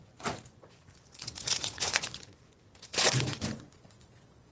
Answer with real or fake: fake